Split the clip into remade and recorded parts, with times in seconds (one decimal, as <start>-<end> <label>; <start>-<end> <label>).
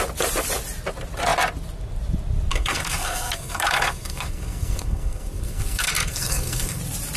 0.0-2.5 recorded; 2.5-6.8 remade; 6.8-7.2 recorded